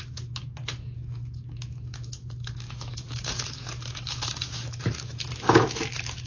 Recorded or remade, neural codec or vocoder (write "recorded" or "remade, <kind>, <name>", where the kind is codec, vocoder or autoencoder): remade, autoencoder, DAC-VAE